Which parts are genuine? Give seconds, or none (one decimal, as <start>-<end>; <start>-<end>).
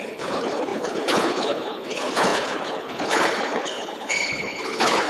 none